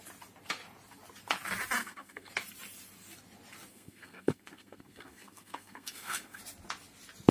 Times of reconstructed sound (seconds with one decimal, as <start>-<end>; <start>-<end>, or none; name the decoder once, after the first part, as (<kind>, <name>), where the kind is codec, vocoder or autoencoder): 1.8-2.3 (codec, SNAC); 3.7-6.4